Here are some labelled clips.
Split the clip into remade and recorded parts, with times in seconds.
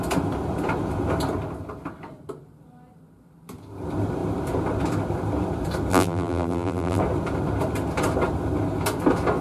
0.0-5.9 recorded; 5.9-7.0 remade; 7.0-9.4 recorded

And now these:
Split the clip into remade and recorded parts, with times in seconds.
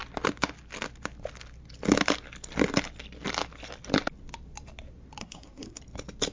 0.0-5.2 recorded; 5.2-5.8 remade; 5.8-6.3 recorded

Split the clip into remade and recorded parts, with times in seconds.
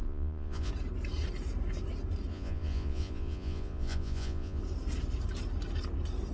0.0-0.7 remade; 0.7-2.3 recorded; 2.3-4.6 remade; 4.6-6.3 recorded